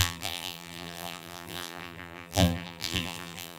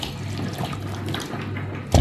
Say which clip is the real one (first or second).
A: second